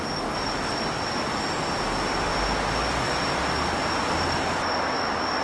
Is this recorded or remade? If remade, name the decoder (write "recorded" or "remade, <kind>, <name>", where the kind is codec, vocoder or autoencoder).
recorded